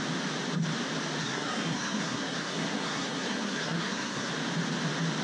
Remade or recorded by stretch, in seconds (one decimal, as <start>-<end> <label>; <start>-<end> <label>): 0.0-1.2 recorded; 1.2-4.3 remade; 4.3-5.2 recorded